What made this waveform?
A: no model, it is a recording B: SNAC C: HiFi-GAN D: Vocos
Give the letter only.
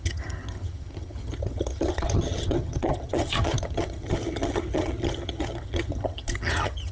C